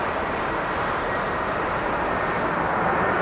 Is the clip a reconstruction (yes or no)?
no